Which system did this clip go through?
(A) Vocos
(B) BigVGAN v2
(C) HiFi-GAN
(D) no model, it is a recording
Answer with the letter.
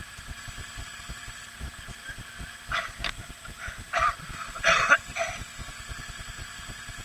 B